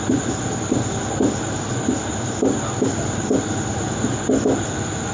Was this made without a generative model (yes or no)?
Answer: yes